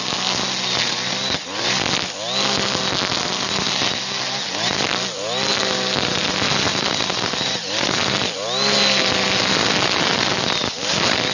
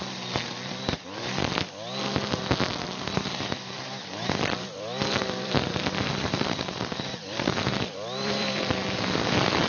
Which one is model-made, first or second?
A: second